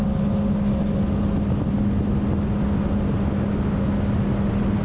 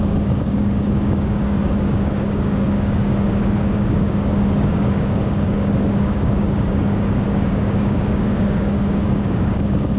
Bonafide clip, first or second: first